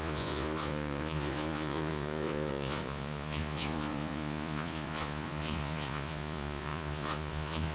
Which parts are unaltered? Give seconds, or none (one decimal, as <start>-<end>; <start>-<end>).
none